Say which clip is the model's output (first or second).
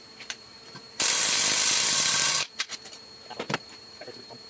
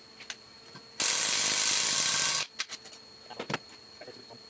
first